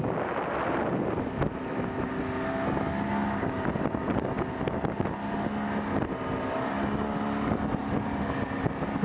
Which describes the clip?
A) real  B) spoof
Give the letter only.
A